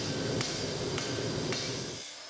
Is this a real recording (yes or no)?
yes